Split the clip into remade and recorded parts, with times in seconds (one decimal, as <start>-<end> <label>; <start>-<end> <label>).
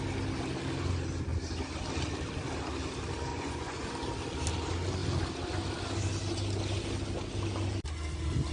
0.0-3.3 recorded; 3.3-3.9 remade; 3.9-8.5 recorded